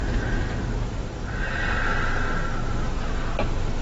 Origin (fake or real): real